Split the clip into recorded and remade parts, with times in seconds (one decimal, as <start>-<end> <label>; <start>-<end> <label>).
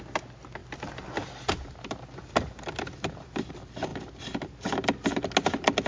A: 0.0-5.9 recorded